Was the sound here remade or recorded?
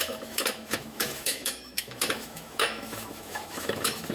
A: remade